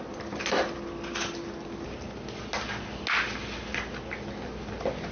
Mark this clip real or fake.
real